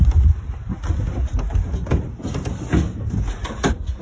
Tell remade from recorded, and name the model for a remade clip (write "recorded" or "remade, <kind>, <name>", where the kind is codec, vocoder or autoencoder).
recorded